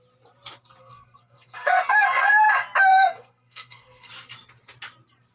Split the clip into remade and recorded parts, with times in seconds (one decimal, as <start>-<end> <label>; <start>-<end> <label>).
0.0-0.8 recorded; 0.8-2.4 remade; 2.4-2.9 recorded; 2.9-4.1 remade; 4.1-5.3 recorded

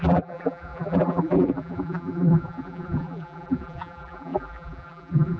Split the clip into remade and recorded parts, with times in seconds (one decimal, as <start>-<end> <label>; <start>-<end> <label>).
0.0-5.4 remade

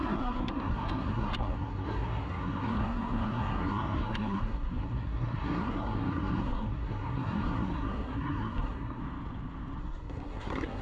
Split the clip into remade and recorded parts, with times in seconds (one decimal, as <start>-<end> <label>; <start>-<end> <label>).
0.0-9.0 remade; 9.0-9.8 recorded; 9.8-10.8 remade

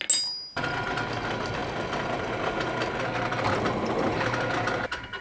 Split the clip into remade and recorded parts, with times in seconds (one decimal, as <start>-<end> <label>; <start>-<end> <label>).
0.0-5.2 recorded

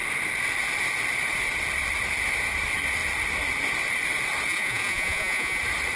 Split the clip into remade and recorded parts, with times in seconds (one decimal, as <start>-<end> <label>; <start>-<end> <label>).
0.0-4.5 recorded; 4.5-5.6 remade; 5.6-6.0 recorded